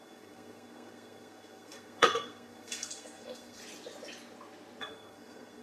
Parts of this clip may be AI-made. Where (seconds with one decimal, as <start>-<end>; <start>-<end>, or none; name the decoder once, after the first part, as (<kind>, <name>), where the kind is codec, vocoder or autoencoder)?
0.0-3.6 (codec, SNAC); 4.8-5.6